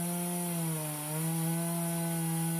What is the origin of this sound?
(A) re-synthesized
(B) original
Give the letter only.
B